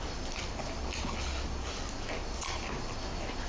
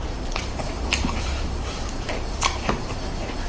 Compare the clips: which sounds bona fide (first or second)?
first